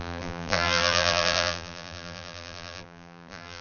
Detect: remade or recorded remade